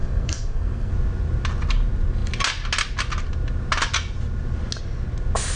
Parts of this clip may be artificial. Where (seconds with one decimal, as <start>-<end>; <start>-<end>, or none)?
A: 0.0-0.9